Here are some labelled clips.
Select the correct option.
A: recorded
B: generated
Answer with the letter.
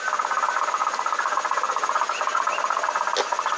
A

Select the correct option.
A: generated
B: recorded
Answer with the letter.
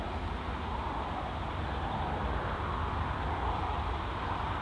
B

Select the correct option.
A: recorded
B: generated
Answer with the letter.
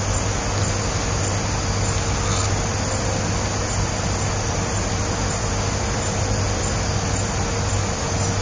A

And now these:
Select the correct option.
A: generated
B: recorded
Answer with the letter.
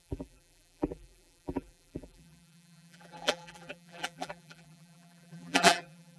A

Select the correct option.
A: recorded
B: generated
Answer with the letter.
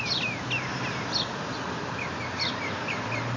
A